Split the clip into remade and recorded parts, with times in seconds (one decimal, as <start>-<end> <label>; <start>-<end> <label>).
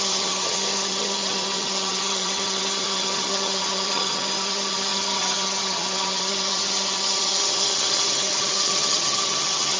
0.0-9.8 remade